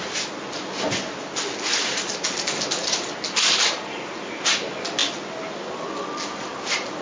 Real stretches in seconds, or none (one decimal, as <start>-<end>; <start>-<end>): 0.0-7.0